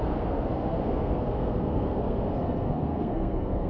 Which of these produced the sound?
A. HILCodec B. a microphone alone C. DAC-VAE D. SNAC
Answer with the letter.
D